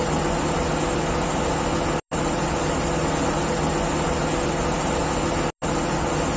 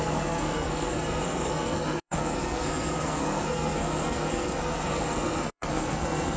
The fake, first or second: second